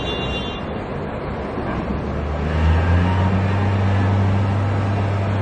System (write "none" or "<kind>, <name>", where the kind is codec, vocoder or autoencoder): none